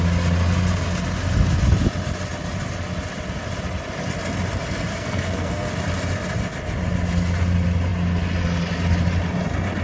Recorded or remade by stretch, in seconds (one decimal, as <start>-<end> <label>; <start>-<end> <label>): 0.0-4.9 recorded; 4.9-5.7 remade; 5.7-9.8 recorded